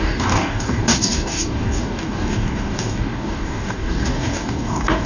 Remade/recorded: remade